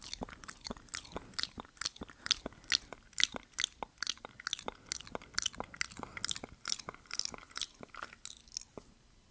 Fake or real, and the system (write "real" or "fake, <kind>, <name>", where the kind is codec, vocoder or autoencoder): real